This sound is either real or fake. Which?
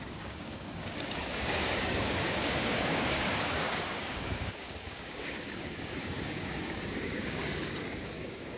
fake